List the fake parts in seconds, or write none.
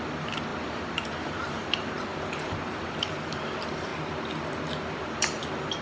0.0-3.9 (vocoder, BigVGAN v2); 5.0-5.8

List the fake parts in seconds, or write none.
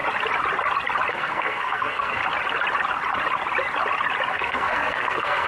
1.1-2.2 (codec, SNAC); 4.3-5.5